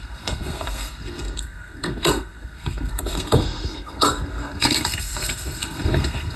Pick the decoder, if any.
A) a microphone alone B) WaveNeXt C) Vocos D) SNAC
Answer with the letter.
D